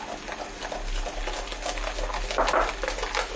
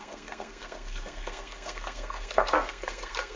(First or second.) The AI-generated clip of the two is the second